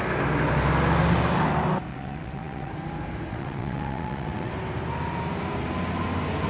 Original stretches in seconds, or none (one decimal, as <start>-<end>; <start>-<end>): 0.0-1.9; 2.7-3.3; 4.5-6.5